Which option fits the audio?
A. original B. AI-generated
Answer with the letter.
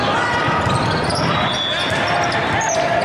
A